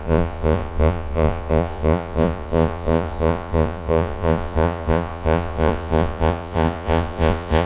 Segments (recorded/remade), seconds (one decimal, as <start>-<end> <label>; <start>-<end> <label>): 0.0-7.7 remade